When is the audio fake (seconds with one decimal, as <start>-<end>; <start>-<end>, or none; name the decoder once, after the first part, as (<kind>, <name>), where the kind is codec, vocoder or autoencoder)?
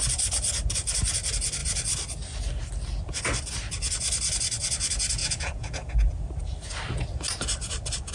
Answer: 5.2-6.1 (vocoder, Vocos)